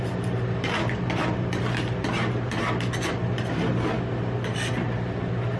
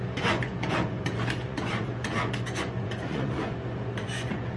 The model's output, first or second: second